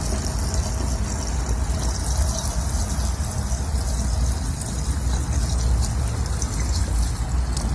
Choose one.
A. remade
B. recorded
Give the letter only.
B